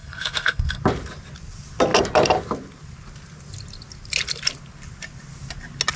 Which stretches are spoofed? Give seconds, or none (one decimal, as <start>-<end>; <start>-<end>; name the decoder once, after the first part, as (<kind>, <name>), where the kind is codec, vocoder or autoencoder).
0.0-0.8 (codec, SNAC)